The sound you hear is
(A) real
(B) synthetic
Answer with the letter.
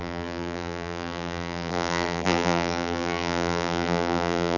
B